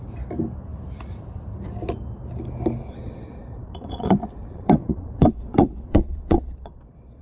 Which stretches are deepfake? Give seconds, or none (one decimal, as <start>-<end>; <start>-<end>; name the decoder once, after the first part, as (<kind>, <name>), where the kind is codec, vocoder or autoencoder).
2.8-7.2 (vocoder, Vocos)